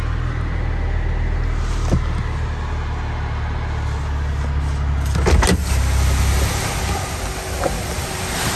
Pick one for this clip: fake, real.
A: real